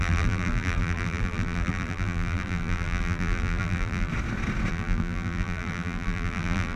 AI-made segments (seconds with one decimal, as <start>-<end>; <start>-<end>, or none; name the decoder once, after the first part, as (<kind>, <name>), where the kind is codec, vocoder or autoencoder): 0.0-4.1 (vocoder, BigVGAN v2); 4.7-6.8